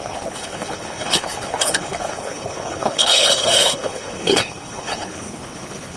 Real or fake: fake